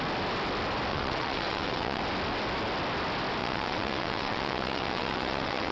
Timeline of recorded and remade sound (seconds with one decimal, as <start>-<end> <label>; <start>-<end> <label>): 0.0-0.9 recorded; 0.9-2.0 remade; 2.0-3.4 recorded; 3.4-5.7 remade